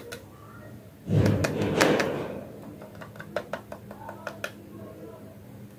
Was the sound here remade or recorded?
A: recorded